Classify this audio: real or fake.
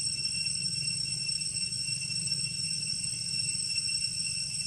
fake